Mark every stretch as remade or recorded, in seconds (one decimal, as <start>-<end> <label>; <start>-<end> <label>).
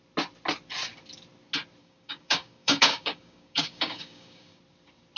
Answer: 0.0-1.8 recorded; 1.8-4.6 remade; 4.6-5.2 recorded